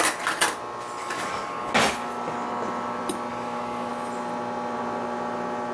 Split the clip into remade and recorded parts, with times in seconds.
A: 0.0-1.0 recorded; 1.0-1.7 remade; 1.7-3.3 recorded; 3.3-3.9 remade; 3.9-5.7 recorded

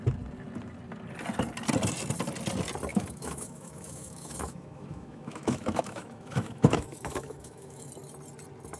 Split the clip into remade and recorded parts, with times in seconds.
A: 0.0-2.9 recorded; 2.9-7.9 remade; 7.9-8.8 recorded